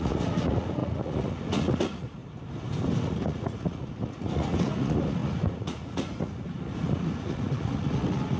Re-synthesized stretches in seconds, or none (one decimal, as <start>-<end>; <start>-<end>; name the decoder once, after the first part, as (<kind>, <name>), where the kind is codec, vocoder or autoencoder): 0.0-2.2 (vocoder, Vocos); 3.0-8.4